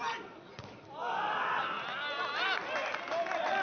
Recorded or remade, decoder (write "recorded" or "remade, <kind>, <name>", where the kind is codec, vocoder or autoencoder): recorded